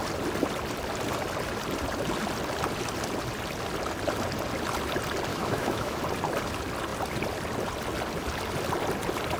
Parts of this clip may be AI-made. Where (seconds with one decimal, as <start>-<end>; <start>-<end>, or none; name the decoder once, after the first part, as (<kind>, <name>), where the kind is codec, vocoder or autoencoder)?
5.3-6.0 (autoencoder, DAC-VAE)